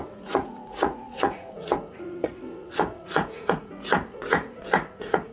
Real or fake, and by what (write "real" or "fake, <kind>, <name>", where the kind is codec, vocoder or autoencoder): fake, vocoder, Vocos